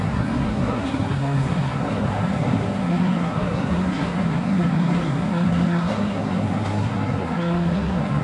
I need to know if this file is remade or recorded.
remade